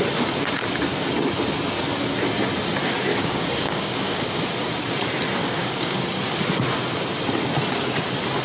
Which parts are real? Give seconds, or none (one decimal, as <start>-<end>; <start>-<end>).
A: 0.0-3.1; 4.4-5.4; 6.0-8.4